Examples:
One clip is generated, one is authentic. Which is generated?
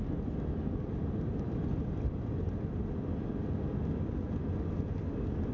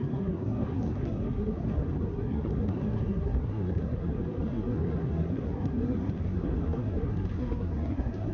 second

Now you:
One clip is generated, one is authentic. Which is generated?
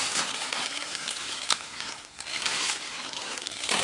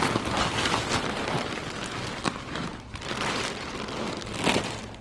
first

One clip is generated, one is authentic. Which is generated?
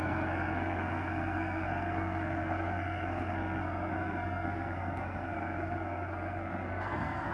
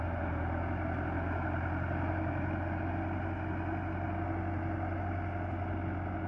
first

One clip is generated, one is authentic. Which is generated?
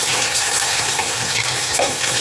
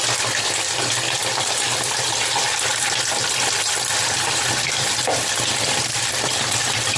first